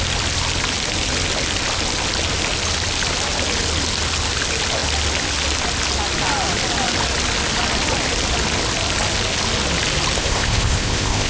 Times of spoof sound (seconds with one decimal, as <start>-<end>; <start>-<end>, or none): 10.2-11.3